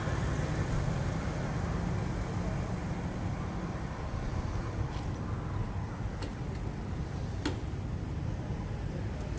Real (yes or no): yes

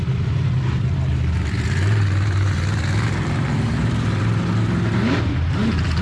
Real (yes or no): no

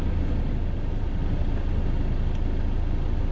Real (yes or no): yes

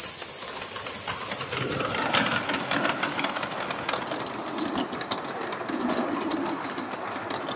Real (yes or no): yes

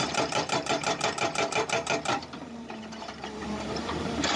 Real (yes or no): no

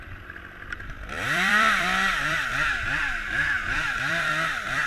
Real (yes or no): no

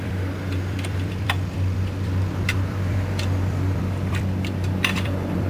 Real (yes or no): no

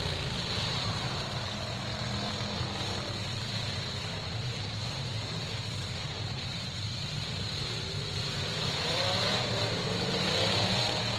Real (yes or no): no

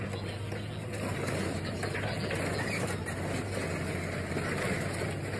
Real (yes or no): yes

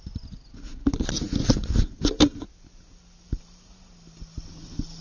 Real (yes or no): yes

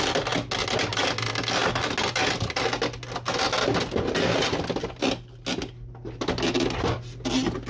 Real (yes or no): yes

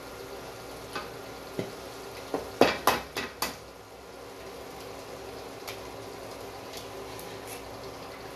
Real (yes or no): yes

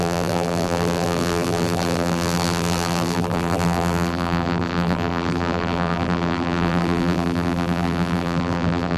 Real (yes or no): no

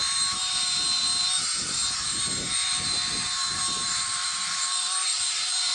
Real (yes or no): no